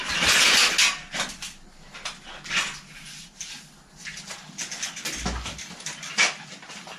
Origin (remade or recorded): recorded